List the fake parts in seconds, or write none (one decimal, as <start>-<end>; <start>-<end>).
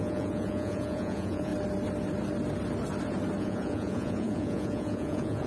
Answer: 0.0-1.5; 3.4-5.5